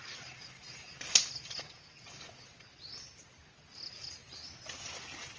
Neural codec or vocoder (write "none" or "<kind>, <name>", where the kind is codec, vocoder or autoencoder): none